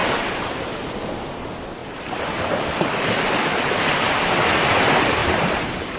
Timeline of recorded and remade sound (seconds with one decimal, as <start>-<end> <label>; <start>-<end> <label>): 0.0-0.9 remade; 0.9-5.2 recorded; 5.2-6.0 remade